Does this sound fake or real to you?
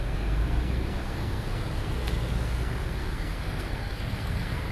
fake